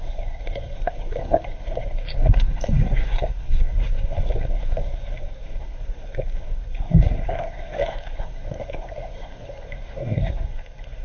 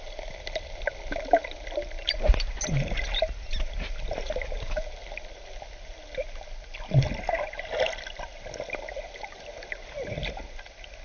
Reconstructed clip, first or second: first